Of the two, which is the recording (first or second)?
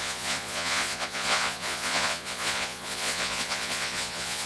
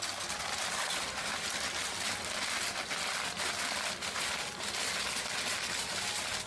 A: second